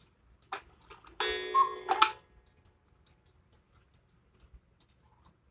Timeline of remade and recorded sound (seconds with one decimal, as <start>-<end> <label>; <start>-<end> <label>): 0.0-5.5 recorded